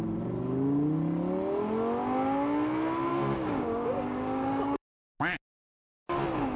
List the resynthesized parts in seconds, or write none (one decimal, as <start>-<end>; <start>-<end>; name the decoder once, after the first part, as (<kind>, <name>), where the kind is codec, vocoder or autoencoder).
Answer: 3.1-5.0 (codec, DAC)